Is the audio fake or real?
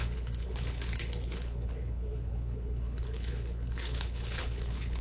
fake